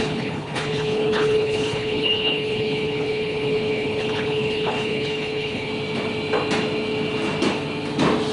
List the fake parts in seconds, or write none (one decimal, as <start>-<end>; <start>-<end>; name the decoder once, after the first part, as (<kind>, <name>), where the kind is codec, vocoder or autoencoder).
0.0-5.7 (codec, HILCodec)